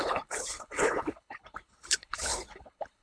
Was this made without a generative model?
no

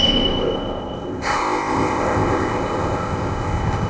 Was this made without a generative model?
no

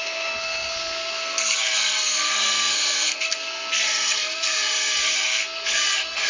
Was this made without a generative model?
no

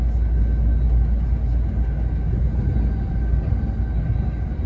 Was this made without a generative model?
yes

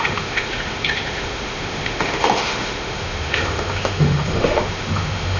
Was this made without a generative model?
no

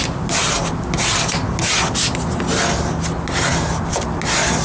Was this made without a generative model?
yes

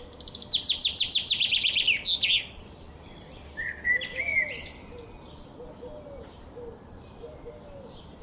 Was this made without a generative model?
yes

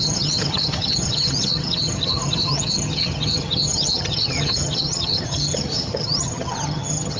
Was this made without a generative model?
no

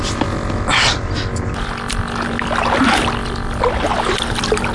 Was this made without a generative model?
yes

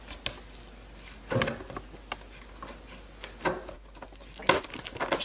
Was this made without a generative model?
yes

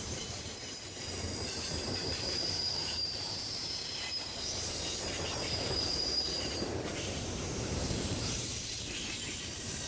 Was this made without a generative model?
no